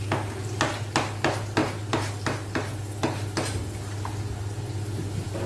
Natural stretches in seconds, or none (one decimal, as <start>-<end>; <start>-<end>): 0.0-5.5